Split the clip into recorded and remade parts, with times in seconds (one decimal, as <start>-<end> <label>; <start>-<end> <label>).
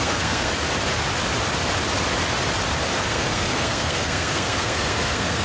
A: 0.0-0.5 remade; 0.5-3.1 recorded; 3.1-5.4 remade